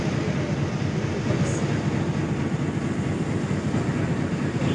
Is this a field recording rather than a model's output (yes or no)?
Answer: yes